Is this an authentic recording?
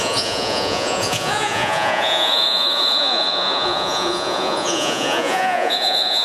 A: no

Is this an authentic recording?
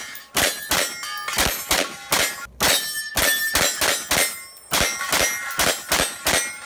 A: yes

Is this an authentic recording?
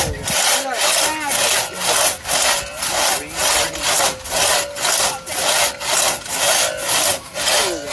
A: yes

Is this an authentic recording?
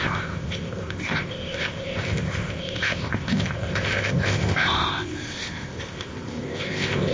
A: no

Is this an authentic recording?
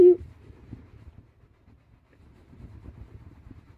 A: no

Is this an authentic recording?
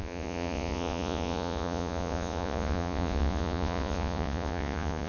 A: no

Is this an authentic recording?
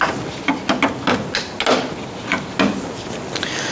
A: yes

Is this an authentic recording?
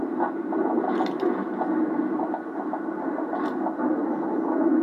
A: yes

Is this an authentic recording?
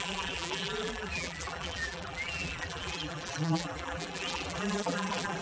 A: no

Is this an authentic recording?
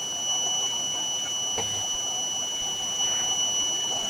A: yes